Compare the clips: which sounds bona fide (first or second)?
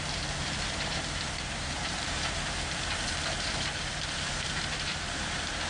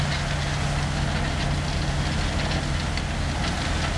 second